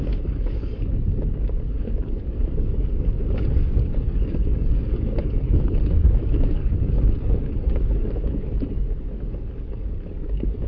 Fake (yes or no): yes